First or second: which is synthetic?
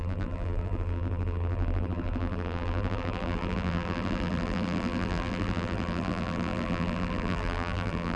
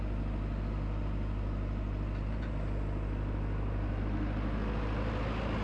first